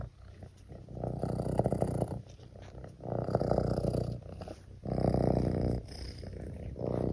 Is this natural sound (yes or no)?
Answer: yes